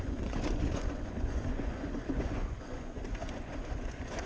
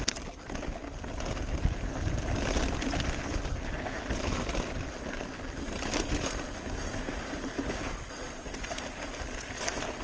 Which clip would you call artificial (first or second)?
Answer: first